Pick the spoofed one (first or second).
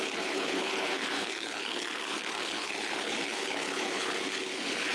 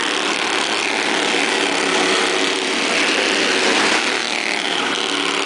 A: first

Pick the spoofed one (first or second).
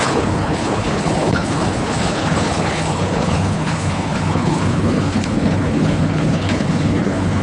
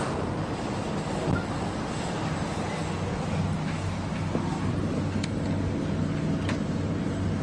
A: first